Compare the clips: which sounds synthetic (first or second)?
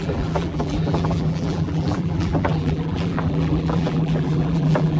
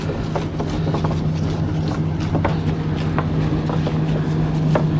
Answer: first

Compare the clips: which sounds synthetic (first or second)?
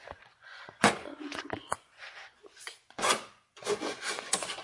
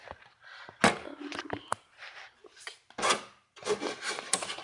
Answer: first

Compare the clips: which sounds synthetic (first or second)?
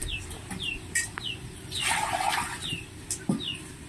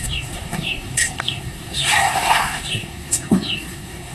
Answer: second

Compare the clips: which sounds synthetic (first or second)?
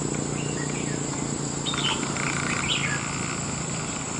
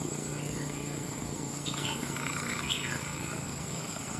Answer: second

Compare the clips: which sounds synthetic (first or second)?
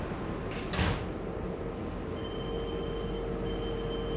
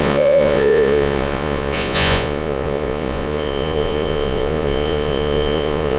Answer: second